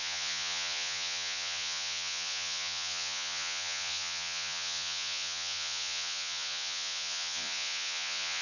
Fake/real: fake